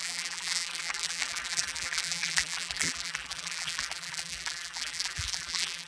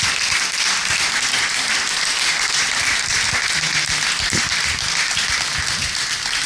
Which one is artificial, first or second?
first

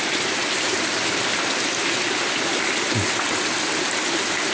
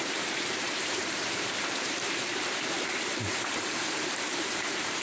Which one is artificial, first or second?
second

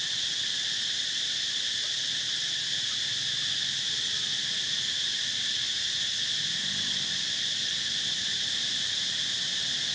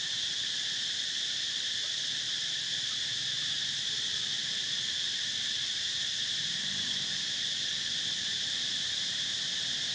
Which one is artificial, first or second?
second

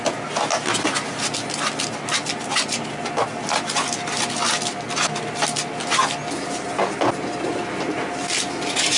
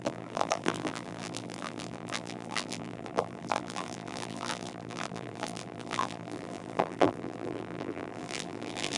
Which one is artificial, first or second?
second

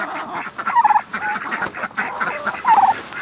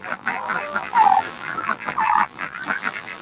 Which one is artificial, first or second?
second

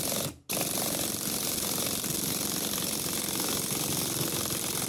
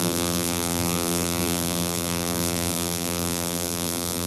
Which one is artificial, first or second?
second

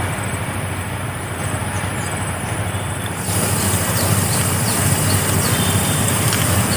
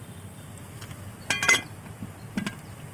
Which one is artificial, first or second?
first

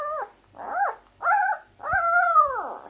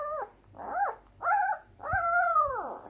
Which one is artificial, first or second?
second